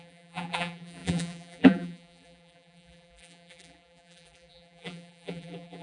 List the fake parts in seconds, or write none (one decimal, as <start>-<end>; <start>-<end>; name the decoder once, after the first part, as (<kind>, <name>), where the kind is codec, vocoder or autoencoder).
0.0-5.8 (vocoder, BigVGAN v2)